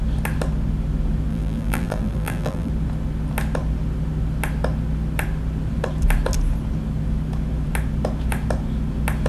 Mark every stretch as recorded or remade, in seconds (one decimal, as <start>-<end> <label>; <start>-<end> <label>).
0.0-1.3 recorded; 1.3-2.7 remade; 2.7-9.3 recorded